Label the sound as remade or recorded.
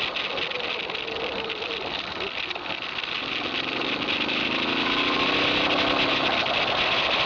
recorded